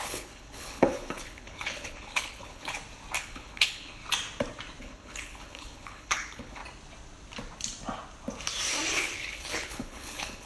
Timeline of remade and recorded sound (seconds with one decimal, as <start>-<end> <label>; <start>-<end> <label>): 0.0-2.7 remade; 2.7-3.2 recorded; 3.2-4.0 remade; 4.0-4.8 recorded; 4.8-6.6 remade; 6.6-8.9 recorded; 8.9-10.5 remade